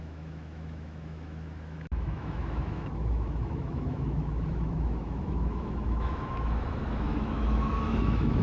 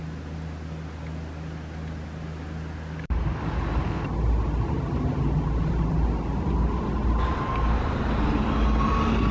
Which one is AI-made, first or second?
first